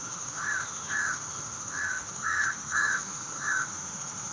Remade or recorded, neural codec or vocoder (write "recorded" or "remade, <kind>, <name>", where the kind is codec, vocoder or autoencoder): remade, autoencoder, DAC-VAE